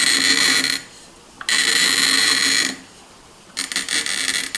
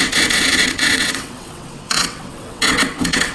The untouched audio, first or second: first